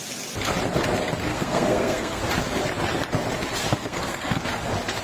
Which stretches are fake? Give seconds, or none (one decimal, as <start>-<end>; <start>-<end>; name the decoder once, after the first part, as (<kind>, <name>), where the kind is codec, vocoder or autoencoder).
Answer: 1.3-2.2 (codec, SNAC); 3.7-4.4